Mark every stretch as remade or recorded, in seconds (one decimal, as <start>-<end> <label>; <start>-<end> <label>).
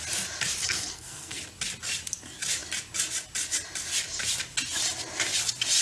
0.0-0.6 recorded; 0.6-1.4 remade; 1.4-5.8 recorded